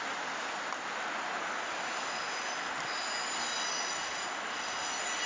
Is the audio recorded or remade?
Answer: recorded